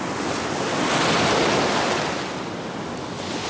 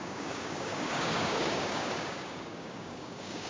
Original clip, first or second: first